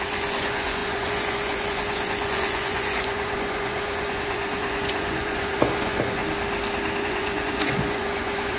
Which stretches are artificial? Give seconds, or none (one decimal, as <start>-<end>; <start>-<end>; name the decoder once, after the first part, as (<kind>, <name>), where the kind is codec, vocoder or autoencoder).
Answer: 0.0-6.2 (vocoder, Vocos); 7.0-8.6